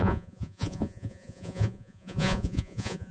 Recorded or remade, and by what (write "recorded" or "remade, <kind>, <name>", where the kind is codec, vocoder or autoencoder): remade, vocoder, Vocos